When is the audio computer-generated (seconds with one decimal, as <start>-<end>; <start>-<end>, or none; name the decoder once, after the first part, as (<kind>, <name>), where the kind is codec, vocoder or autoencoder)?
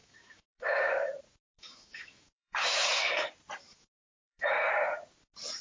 0.0-1.1 (autoencoder, DAC-VAE); 1.5-3.0; 3.7-4.5